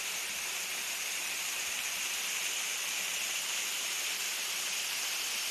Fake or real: fake